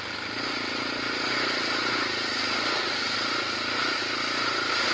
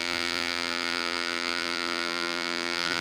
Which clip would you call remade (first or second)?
second